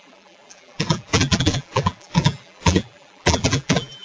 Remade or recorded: remade